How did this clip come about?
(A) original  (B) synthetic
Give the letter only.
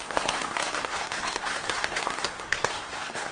B